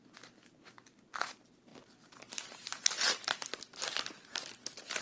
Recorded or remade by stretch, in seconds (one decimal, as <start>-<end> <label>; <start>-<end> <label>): 0.0-5.0 recorded